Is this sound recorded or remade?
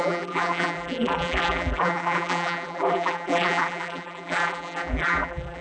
remade